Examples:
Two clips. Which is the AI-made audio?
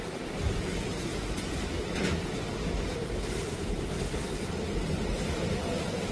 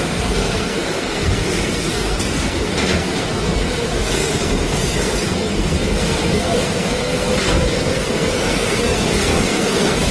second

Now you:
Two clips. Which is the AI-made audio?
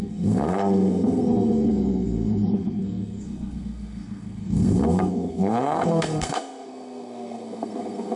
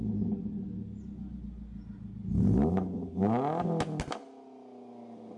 first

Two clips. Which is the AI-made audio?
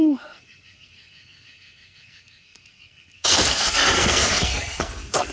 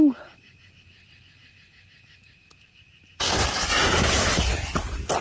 first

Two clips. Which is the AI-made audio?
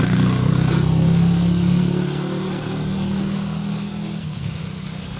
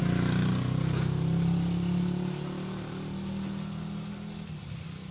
first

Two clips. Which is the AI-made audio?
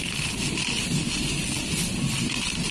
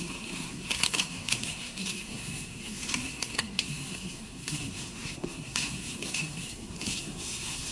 second